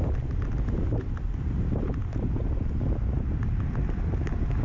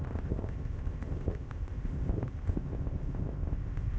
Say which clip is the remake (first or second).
second